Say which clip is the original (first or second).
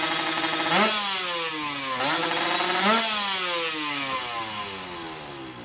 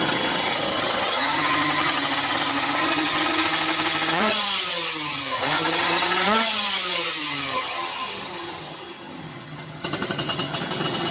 first